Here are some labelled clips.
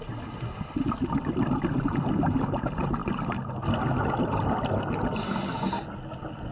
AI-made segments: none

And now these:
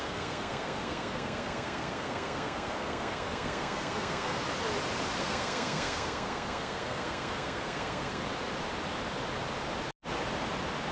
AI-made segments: 0.0-4.4 (codec, SNAC); 5.2-8.2